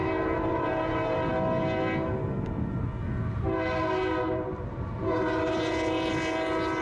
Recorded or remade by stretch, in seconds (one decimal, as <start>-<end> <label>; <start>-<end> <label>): 0.0-1.3 remade; 1.3-6.8 recorded